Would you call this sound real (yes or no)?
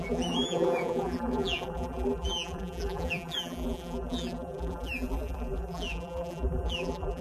no